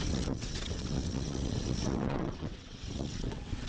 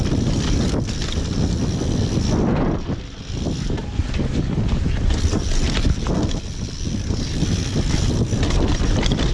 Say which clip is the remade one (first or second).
first